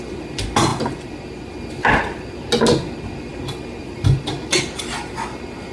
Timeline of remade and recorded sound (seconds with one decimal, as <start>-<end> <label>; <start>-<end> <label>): 0.0-5.7 recorded